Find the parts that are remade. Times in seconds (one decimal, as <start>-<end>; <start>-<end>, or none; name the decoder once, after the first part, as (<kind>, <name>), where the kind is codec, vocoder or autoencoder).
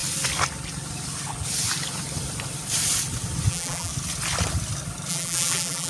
3.5-3.9 (vocoder, BigVGAN v2); 5.1-5.9